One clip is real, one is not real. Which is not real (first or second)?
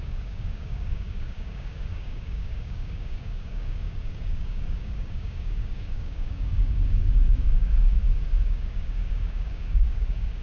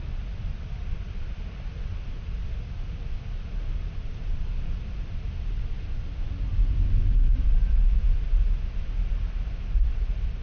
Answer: first